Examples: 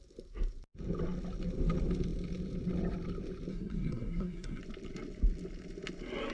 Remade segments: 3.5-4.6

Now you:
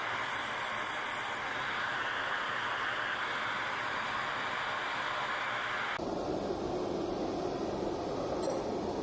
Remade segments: none

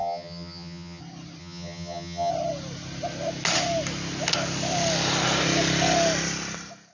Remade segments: 0.0-1.0; 1.4-2.3

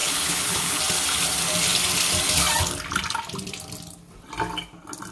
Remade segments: 0.0-0.8

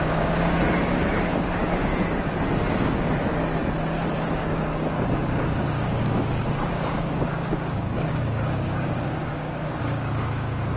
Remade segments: 0.0-1.9; 2.7-3.4; 4.3-10.8